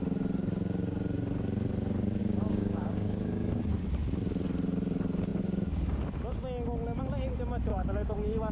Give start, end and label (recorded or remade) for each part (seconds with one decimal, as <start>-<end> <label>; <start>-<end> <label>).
0.0-2.2 recorded; 2.2-3.7 remade; 3.7-7.7 recorded; 7.7-8.5 remade